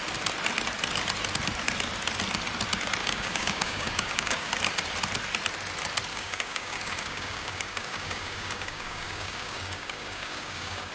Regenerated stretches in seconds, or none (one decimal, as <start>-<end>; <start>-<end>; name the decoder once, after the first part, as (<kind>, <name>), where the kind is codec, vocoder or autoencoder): 3.0-4.5 (codec, DAC); 6.1-10.9